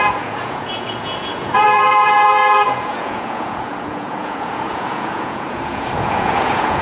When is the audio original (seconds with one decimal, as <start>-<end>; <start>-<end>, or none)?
none